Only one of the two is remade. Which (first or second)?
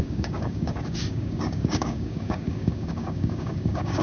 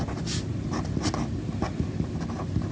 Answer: first